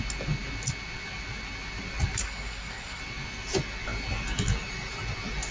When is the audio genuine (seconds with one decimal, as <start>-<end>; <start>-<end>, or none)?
0.0-2.2; 3.0-5.5